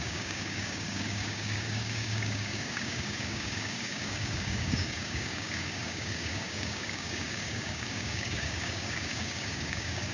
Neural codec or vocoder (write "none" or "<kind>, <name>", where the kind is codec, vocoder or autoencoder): codec, DAC